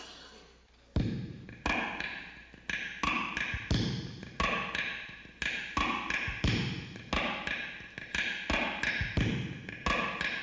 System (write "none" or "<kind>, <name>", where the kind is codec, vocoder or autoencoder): none